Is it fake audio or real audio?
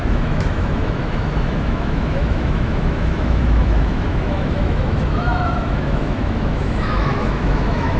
fake